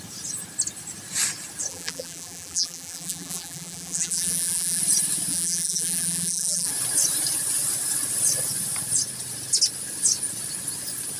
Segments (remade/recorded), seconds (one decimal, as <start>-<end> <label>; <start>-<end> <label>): 0.0-1.7 recorded; 1.7-4.8 remade; 4.8-5.3 recorded; 5.3-6.7 remade; 6.7-11.2 recorded